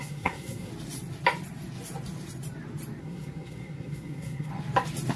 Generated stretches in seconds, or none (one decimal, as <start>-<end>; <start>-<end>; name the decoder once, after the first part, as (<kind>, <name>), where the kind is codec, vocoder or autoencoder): 0.0-0.7 (codec, SNAC); 3.0-4.5